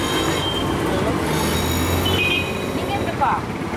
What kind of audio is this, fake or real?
real